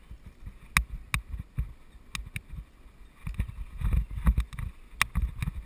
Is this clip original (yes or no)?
yes